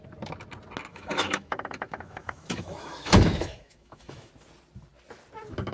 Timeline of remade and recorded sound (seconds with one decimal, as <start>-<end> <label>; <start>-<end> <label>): 0.0-0.9 recorded; 0.9-4.3 remade; 4.3-5.7 recorded